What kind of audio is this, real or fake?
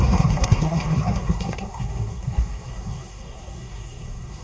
fake